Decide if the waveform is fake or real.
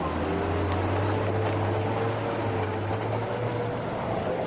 real